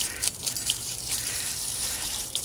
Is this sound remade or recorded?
remade